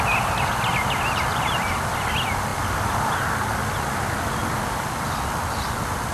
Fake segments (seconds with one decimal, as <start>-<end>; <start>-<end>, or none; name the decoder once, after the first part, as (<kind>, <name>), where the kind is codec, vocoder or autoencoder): 2.5-3.1 (vocoder, BigVGAN v2)